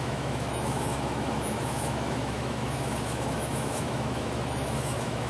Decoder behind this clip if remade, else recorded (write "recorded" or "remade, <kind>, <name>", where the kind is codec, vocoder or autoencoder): remade, autoencoder, DAC-VAE